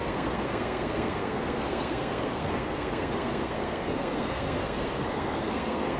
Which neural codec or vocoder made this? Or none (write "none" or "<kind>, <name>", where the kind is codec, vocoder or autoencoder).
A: codec, SNAC